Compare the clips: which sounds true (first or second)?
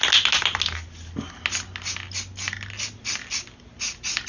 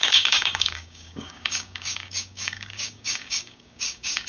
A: first